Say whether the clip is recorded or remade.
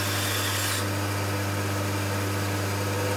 recorded